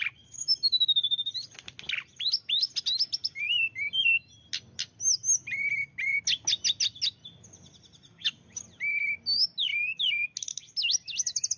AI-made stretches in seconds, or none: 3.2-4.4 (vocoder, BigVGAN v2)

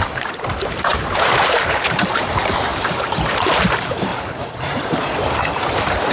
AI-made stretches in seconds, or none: 0.0-6.1 (vocoder, BigVGAN v2)

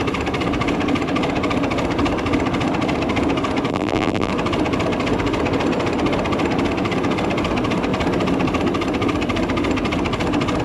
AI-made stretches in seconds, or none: 3.7-4.3 (vocoder, BigVGAN v2)

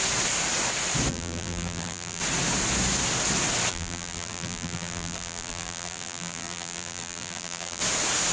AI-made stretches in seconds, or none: 1.1-2.2 (vocoder, BigVGAN v2); 3.7-7.8

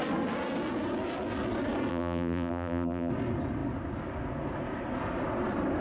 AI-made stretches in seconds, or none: 1.9-3.1 (vocoder, BigVGAN v2)

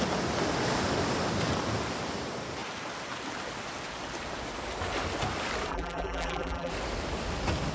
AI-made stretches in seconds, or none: 5.7-6.7 (vocoder, BigVGAN v2)

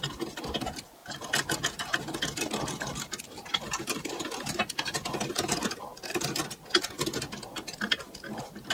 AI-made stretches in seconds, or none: 0.0-5.9 (vocoder, BigVGAN v2)